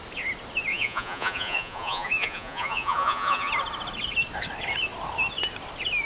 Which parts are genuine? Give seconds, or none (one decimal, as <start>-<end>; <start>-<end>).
0.0-0.7; 3.5-6.1